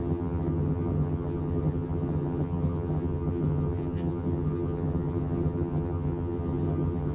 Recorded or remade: remade